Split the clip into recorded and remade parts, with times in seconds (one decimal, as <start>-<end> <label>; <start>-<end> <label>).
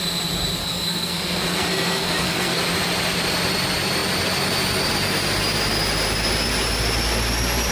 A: 0.0-0.6 recorded; 0.6-2.6 remade; 2.6-7.7 recorded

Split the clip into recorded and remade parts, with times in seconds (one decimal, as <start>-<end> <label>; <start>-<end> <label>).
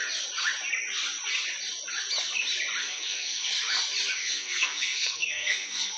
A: 0.0-2.8 recorded; 2.8-3.5 remade; 3.5-4.2 recorded; 4.2-6.0 remade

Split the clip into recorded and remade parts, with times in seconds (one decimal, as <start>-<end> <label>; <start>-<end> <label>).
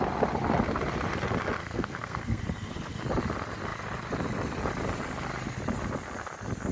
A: 0.0-1.6 recorded; 1.6-2.4 remade; 2.4-6.7 recorded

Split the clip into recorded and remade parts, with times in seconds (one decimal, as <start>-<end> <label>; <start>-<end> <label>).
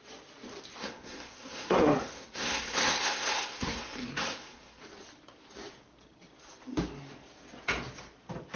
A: 0.0-0.8 recorded; 0.8-4.8 remade; 4.8-8.6 recorded